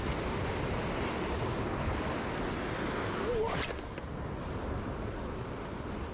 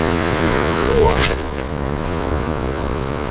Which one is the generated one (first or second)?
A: second